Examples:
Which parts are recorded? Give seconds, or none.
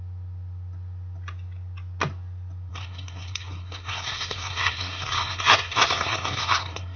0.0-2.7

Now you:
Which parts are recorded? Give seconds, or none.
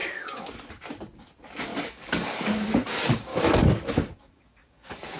0.7-1.7; 2.7-3.3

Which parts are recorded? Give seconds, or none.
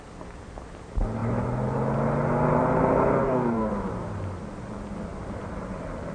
0.0-3.2; 3.7-6.1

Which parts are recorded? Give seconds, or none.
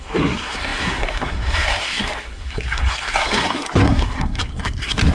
none